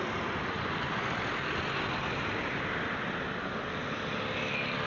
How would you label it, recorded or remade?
recorded